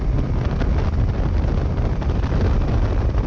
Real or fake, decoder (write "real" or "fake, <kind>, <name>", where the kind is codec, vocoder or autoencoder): real